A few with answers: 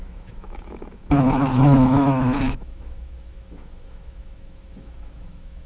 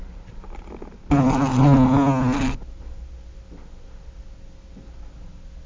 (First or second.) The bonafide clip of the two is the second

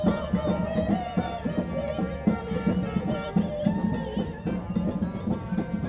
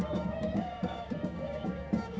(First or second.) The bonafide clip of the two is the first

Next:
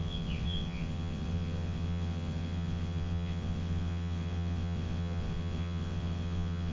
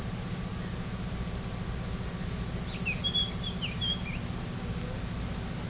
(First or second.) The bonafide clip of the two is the second